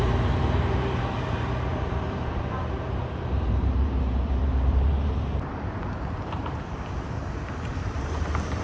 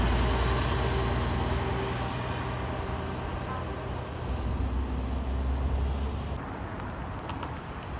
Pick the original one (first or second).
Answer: second